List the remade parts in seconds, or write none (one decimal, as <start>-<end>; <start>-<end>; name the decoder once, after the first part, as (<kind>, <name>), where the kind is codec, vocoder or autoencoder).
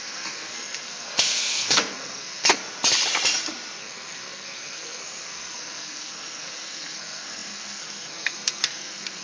0.0-2.6 (codec, SNAC); 3.8-9.2